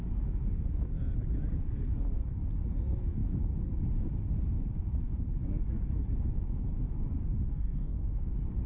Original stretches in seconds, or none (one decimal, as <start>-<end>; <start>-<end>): 0.0-7.5; 8.2-8.7